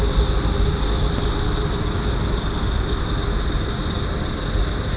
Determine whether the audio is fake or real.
real